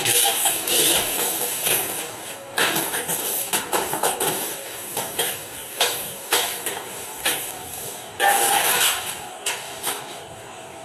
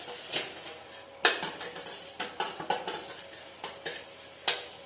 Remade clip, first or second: first